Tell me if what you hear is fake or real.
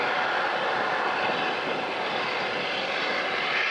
real